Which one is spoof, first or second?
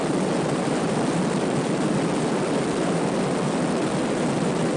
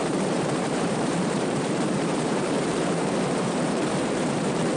second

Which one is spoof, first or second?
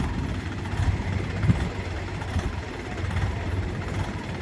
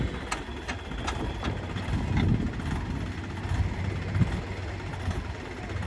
first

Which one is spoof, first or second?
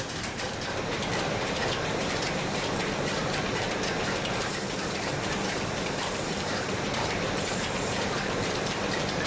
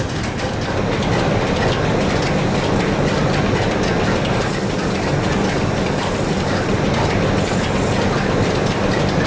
first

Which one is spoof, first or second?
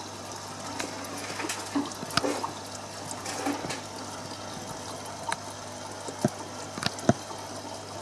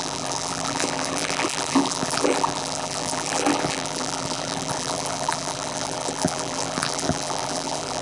second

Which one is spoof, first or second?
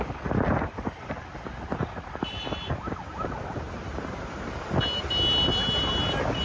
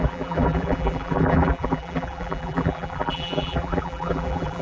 second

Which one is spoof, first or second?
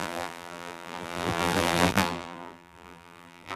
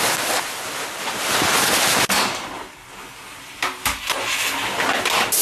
first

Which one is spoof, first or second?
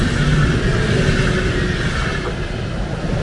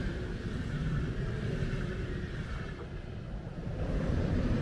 second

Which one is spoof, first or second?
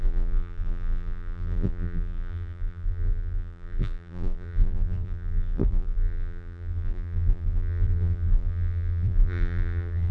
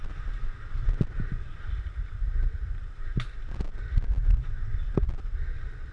first